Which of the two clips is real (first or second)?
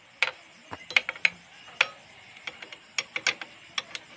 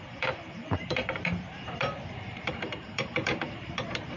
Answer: first